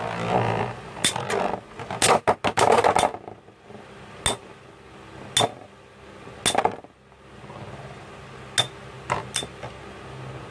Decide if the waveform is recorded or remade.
recorded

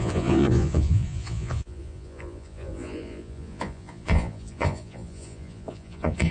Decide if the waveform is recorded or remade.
remade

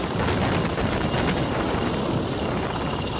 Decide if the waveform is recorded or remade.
recorded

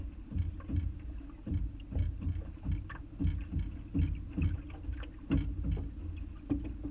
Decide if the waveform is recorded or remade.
recorded